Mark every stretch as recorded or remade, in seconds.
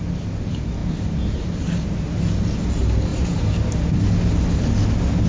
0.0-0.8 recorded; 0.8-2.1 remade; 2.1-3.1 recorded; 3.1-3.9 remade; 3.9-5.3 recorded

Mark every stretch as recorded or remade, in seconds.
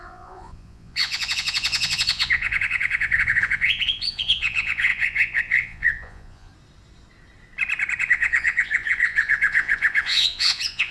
0.0-6.5 remade; 6.5-8.0 recorded; 8.0-10.9 remade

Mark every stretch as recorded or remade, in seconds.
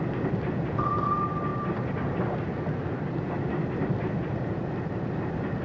0.0-5.6 recorded